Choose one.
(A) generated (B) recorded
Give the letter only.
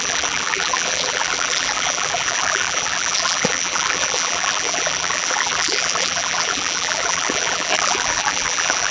A